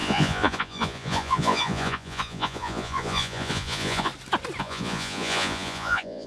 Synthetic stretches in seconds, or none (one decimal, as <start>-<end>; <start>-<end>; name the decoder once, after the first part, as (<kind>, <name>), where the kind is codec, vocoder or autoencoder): 0.0-4.1 (vocoder, Vocos); 4.6-6.3